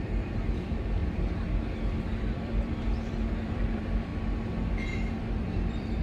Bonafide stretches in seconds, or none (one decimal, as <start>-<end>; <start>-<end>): 1.0-2.0; 4.1-5.2